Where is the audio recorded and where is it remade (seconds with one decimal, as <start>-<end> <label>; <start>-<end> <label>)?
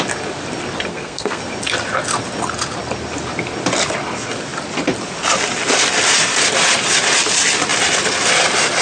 0.0-0.9 recorded; 0.9-1.4 remade; 1.4-8.8 recorded